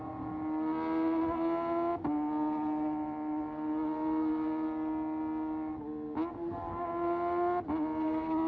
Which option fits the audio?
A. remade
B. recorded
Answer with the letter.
B